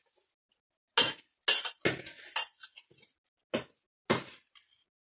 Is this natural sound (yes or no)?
yes